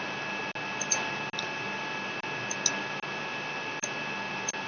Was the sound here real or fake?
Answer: real